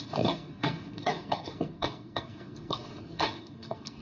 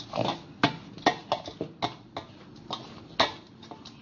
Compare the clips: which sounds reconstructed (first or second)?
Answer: first